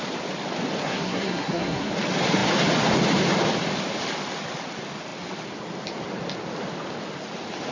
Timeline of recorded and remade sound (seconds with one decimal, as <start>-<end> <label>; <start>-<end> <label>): 0.0-0.8 recorded; 0.8-1.9 remade; 1.9-7.7 recorded